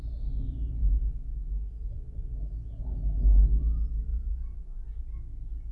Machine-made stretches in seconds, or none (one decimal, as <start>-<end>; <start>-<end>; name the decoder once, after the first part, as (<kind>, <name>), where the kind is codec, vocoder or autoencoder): 1.3-2.3 (vocoder, Vocos); 4.1-5.0